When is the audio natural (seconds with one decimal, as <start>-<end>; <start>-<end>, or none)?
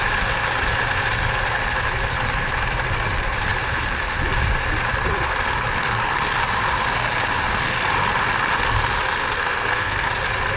0.0-9.2; 10.1-10.6